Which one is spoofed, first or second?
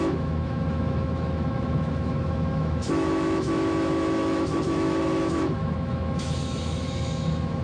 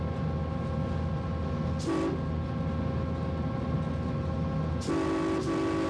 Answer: first